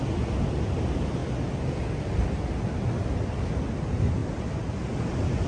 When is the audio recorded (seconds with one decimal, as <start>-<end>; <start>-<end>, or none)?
0.0-5.5